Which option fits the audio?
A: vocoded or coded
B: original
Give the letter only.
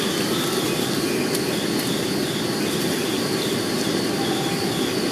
B